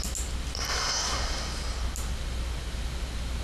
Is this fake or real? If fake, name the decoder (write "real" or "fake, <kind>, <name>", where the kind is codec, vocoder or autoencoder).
real